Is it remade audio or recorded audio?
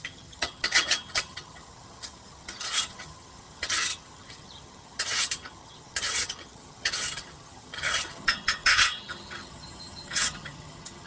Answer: remade